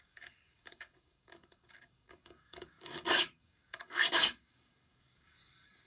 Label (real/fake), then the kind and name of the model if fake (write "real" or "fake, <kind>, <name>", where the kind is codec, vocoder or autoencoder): fake, codec, DAC